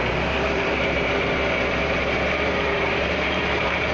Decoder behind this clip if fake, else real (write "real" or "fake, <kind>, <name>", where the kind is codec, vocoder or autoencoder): fake, vocoder, BigVGAN v2